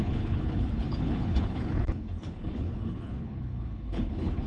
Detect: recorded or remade remade